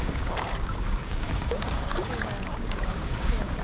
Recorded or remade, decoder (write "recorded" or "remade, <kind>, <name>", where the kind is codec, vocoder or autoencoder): remade, codec, DAC